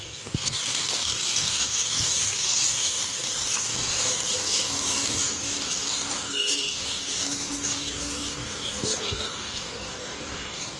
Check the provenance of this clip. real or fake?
fake